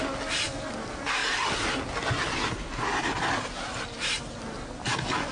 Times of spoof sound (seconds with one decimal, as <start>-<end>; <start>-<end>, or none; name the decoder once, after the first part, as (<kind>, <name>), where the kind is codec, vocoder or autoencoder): none